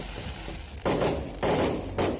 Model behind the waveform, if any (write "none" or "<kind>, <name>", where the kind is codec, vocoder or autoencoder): none